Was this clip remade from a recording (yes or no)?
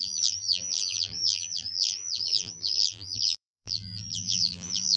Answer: yes